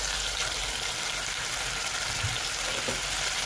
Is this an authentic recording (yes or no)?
yes